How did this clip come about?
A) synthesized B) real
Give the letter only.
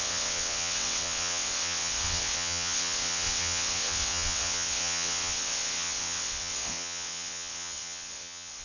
A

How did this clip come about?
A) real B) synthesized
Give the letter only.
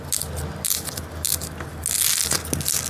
A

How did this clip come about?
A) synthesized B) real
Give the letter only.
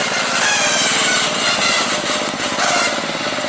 B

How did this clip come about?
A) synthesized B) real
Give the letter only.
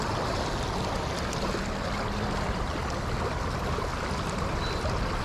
B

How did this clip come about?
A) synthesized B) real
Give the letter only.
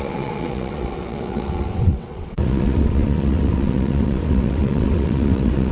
A